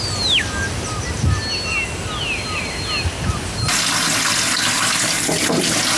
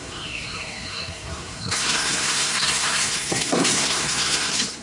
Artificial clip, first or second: second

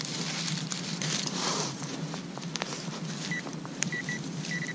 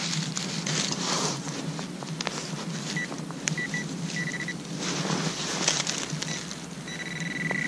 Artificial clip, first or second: first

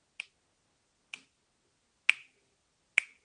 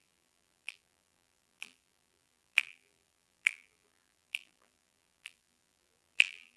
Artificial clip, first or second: second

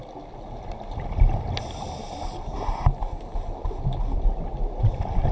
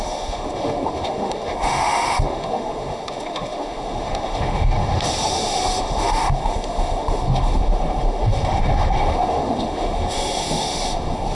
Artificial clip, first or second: second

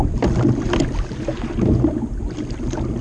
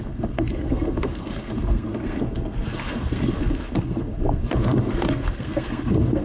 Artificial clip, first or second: second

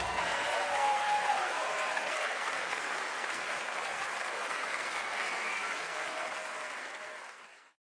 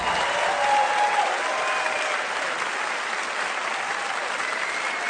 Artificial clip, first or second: first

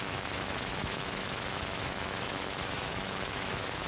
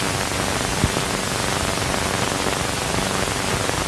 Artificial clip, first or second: first